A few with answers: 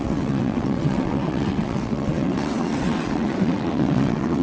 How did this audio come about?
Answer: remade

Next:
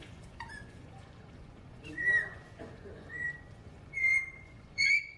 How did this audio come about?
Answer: remade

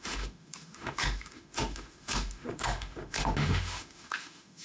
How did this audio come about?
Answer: remade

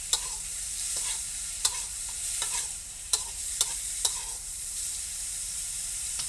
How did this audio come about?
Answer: remade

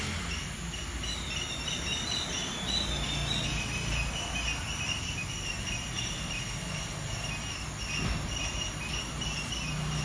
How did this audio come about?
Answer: recorded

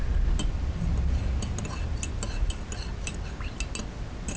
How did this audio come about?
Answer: recorded